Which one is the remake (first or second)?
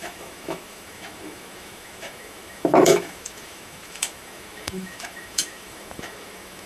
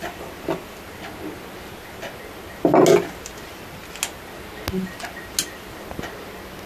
first